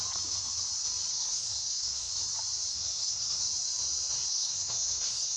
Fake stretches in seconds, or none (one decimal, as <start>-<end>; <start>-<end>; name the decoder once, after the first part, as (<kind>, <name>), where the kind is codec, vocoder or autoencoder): 1.1-2.1 (codec, SNAC); 2.7-3.4; 4.3-5.4